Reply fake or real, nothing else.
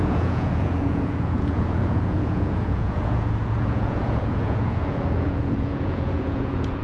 fake